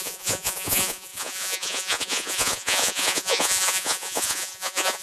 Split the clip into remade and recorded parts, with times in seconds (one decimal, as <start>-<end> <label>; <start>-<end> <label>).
0.0-5.0 remade